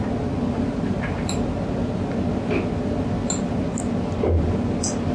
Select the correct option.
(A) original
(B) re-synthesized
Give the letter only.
A